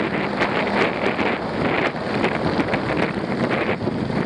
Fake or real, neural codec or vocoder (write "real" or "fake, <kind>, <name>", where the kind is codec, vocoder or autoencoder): real